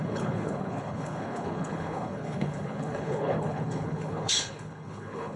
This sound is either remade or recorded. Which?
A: remade